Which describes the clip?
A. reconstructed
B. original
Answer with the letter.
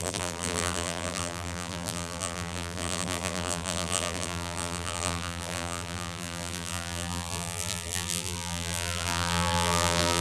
A